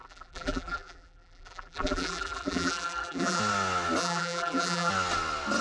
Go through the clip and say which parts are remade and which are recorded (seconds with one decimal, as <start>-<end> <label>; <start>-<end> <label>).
0.0-3.4 remade; 3.4-4.0 recorded; 4.0-4.9 remade; 4.9-5.6 recorded